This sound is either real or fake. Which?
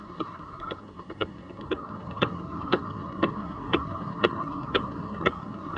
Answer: fake